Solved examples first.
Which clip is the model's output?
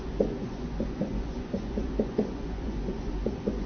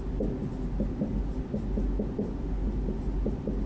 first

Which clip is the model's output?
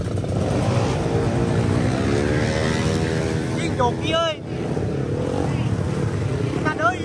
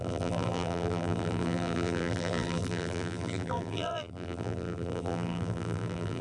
second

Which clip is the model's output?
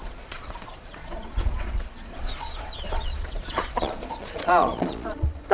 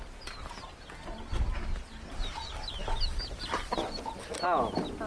first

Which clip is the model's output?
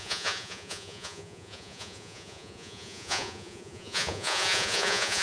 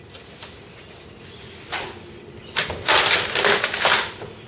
first